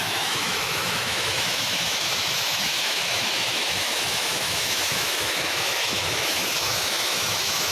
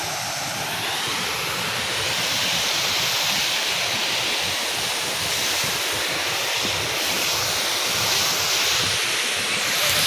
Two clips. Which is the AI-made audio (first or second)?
first